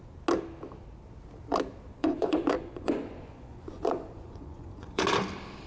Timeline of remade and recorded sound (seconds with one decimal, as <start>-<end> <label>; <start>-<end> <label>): 0.0-2.0 recorded; 2.0-5.0 remade; 5.0-5.7 recorded